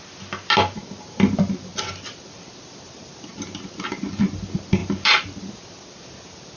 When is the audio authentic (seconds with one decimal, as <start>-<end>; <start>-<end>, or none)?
0.0-6.6